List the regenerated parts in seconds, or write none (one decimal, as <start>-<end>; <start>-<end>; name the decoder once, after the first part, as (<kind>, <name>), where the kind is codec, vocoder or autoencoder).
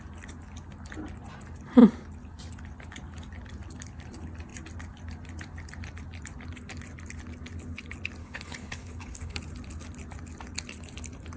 8.2-9.4 (codec, HILCodec)